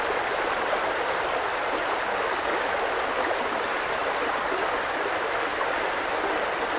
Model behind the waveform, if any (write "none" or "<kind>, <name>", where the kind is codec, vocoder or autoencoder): none